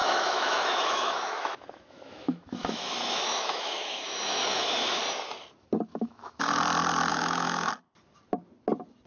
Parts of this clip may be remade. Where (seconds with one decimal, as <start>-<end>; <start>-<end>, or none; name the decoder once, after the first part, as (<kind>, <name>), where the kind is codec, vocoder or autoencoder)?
0.0-5.0 (autoencoder, DAC-VAE); 5.9-6.6; 7.1-7.7